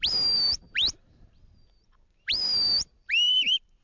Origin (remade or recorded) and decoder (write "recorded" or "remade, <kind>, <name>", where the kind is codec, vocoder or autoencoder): remade, vocoder, BigVGAN v2